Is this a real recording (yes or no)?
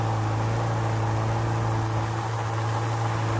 yes